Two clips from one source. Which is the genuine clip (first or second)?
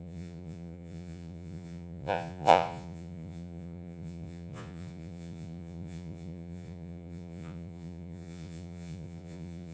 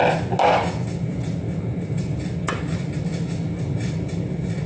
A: second